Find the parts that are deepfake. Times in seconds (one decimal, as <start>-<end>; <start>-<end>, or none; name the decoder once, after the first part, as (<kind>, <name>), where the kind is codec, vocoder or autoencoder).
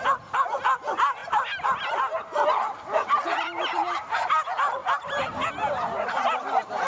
4.8-5.5 (vocoder, BigVGAN v2)